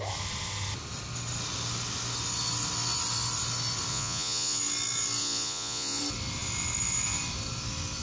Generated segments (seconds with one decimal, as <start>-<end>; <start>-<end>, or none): 3.9-4.6; 5.2-6.0